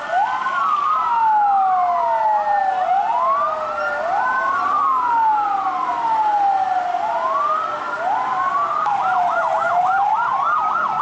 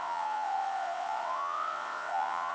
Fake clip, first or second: second